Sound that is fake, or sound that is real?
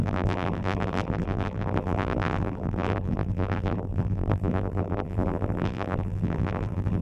fake